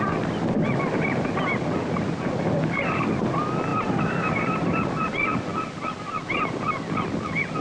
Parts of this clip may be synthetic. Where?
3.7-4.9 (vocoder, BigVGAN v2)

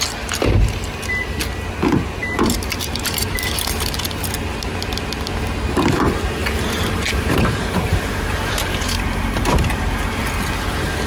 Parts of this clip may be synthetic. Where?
2.2-4.0 (vocoder, BigVGAN v2); 6.4-10.2